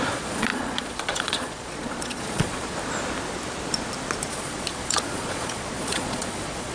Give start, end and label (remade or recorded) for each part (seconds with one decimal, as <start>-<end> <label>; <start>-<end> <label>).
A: 0.0-2.8 remade; 2.8-4.3 recorded; 4.3-6.7 remade